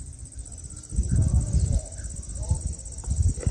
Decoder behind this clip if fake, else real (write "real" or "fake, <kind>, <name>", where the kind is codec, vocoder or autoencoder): real